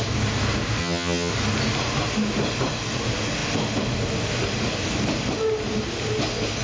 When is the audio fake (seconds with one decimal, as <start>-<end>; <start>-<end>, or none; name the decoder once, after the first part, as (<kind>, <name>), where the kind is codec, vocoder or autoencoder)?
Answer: 0.8-1.3 (vocoder, HiFi-GAN)